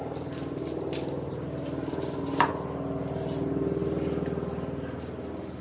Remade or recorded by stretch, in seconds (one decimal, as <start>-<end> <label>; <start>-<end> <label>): 0.0-5.6 recorded